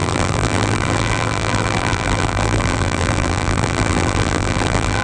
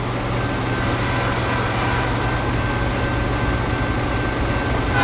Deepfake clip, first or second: first